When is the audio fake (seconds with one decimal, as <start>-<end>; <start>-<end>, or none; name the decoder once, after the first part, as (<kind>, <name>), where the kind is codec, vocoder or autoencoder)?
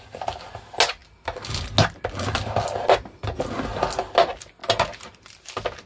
none